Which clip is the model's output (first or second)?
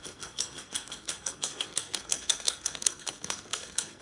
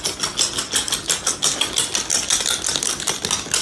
first